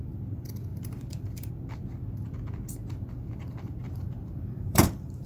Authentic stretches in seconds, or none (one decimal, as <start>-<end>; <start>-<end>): 0.0-0.7; 1.5-3.8